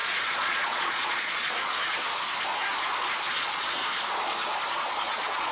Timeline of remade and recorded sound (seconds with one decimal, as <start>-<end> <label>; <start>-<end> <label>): 0.0-1.8 remade; 1.8-3.3 recorded; 3.3-3.8 remade; 3.8-4.9 recorded; 4.9-5.5 remade